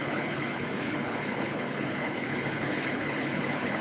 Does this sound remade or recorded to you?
remade